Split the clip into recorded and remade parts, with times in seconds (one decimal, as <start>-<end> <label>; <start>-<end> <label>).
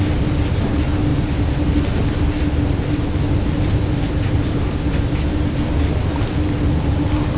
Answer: 0.0-7.4 recorded